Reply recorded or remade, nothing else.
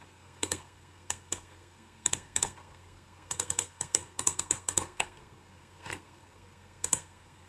remade